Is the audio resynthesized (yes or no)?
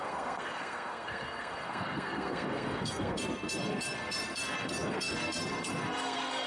yes